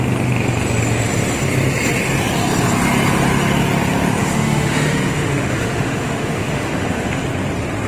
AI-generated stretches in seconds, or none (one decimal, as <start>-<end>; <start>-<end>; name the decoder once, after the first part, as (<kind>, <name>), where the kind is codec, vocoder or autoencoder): 4.2-7.2 (autoencoder, DAC-VAE)